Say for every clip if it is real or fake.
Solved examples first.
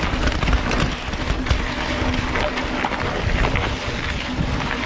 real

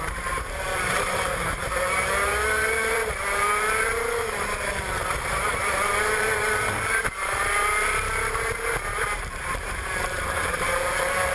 fake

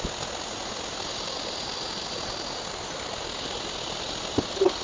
real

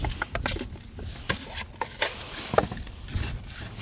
real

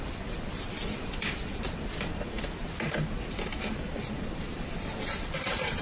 fake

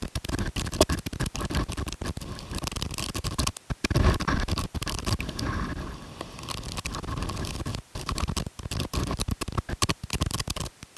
fake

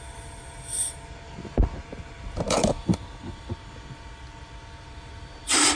fake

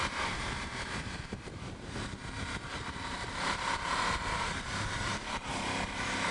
fake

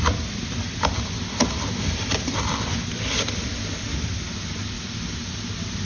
real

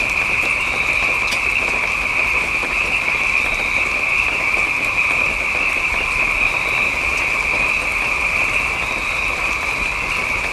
real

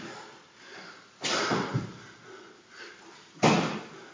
real